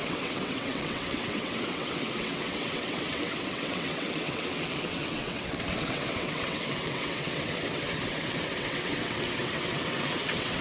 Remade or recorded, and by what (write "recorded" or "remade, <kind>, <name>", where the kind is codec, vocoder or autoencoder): remade, vocoder, WaveNeXt